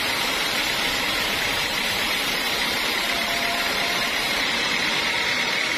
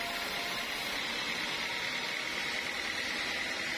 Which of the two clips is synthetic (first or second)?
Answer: first